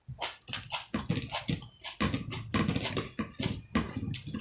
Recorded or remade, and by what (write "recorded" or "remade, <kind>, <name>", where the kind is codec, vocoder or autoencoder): recorded